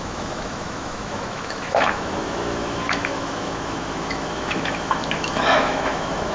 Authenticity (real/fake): fake